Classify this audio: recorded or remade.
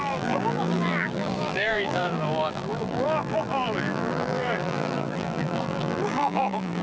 remade